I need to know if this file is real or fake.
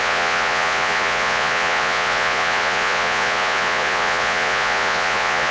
fake